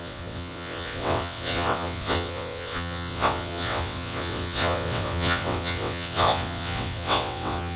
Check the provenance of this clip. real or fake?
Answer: fake